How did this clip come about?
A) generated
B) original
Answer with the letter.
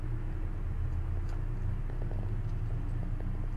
B